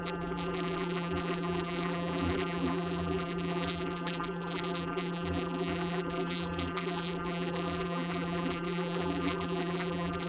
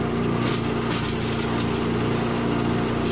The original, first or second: second